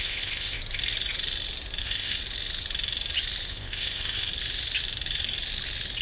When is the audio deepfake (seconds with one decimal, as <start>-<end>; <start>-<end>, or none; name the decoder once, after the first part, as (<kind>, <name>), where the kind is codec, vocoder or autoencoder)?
0.0-0.6 (codec, ZipCodec); 1.8-2.2; 3.5-4.3